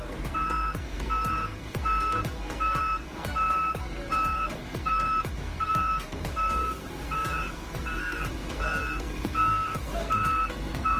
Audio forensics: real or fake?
fake